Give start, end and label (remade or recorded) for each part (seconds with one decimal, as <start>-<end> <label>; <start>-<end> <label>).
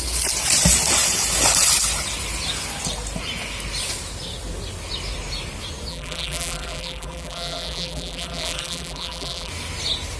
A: 0.0-5.9 recorded; 5.9-9.5 remade; 9.5-10.2 recorded